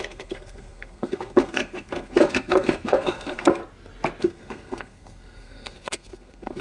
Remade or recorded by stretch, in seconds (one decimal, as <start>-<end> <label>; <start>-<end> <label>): 0.0-3.6 remade; 3.6-4.2 recorded; 4.2-6.6 remade